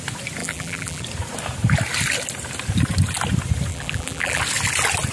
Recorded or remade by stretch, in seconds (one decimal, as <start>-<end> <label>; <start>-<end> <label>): 0.0-0.4 recorded; 0.4-1.0 remade; 1.0-3.7 recorded; 3.7-4.4 remade; 4.4-5.1 recorded